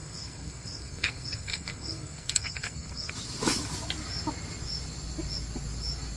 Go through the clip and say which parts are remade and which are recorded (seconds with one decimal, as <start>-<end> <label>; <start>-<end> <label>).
0.0-3.1 remade; 3.1-6.2 recorded